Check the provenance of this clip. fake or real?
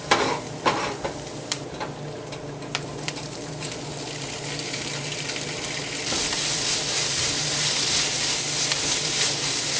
fake